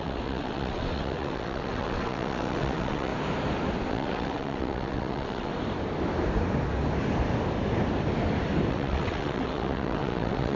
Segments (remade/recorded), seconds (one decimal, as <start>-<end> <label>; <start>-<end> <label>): 0.0-3.1 remade; 3.1-3.9 recorded; 3.9-5.5 remade; 5.5-8.7 recorded; 8.7-10.6 remade